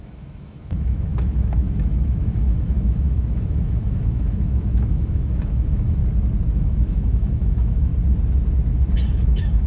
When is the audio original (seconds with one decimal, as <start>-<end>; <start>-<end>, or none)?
6.0-6.6; 7.9-9.1